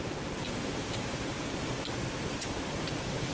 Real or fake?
fake